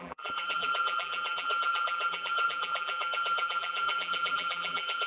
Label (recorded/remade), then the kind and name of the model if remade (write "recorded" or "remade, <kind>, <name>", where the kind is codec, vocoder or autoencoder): remade, vocoder, BigVGAN v2